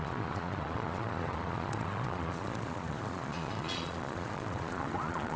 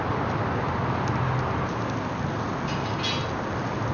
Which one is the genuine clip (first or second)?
second